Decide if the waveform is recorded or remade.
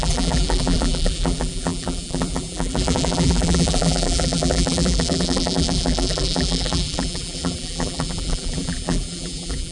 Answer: remade